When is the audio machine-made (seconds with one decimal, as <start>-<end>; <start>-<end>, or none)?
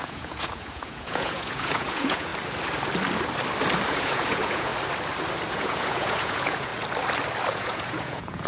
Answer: 0.0-2.3; 3.9-4.7; 5.5-6.7; 7.5-8.5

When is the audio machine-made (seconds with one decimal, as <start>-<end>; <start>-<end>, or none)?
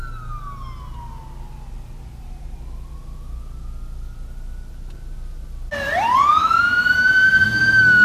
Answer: 6.4-7.6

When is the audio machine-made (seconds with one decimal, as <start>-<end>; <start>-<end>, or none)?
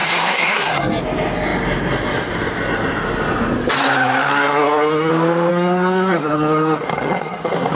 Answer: 0.0-1.0; 4.3-5.1; 5.5-7.7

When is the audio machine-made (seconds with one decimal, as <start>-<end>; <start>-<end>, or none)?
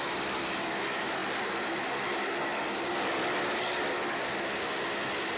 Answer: none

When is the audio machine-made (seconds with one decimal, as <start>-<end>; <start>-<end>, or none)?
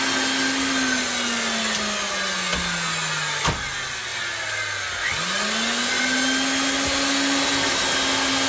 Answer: none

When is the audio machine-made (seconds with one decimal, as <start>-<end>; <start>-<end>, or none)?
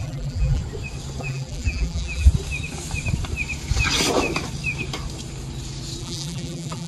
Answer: 0.0-0.6; 1.2-2.3; 6.0-6.9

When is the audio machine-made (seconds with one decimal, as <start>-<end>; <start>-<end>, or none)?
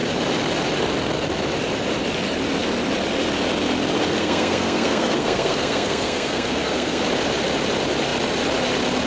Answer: 4.2-7.0